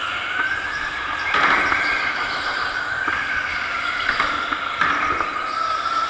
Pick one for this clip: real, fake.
real